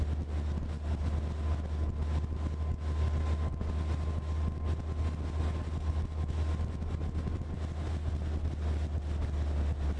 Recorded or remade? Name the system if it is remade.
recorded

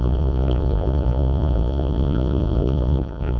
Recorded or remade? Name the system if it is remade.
remade, vocoder, Vocos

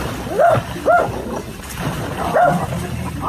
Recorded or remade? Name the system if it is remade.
recorded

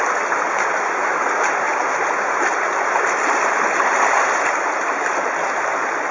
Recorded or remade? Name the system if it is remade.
recorded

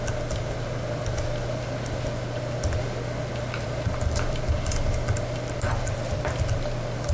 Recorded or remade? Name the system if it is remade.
recorded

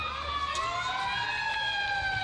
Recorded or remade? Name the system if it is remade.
recorded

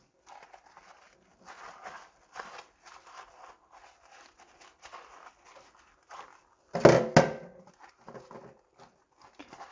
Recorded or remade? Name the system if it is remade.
recorded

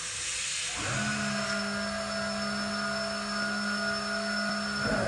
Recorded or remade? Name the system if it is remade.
recorded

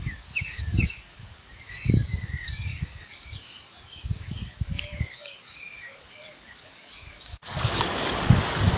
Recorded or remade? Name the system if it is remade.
remade, codec, DAC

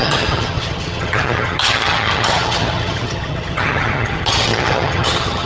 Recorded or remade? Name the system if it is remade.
remade, vocoder, HiFi-GAN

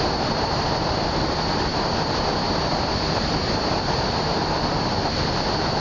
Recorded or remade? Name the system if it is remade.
recorded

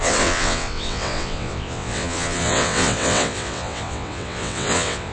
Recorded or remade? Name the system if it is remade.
remade, vocoder, WaveNeXt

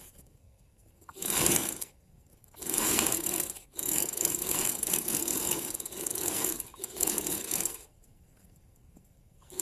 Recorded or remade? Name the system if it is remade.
remade, codec, SNAC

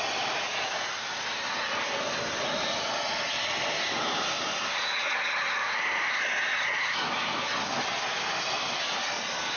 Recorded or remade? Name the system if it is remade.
recorded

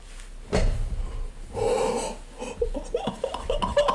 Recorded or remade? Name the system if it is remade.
recorded